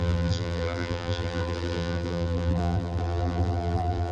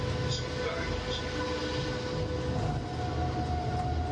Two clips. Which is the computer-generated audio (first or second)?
first